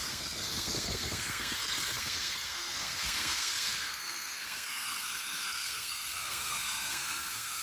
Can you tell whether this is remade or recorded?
remade